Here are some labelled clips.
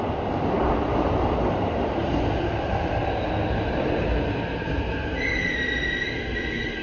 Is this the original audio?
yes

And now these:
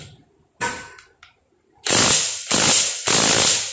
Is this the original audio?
yes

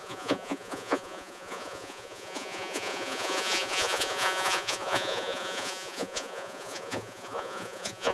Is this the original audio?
no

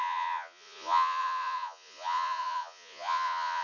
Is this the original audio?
no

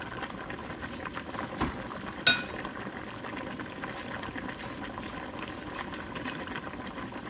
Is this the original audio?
yes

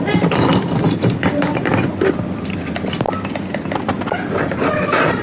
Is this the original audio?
yes